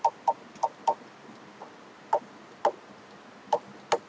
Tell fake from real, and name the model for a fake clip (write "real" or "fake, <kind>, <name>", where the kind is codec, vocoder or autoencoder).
real